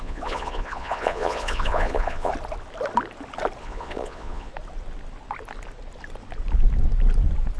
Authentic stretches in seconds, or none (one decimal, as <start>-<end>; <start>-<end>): 2.3-3.6; 4.5-7.6